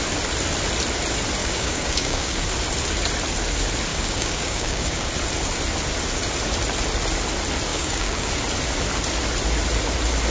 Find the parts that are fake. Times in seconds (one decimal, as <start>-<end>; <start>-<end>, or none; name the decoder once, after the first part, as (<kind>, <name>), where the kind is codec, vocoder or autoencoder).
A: 1.4-2.4 (codec, DAC); 3.9-5.1; 7.7-8.3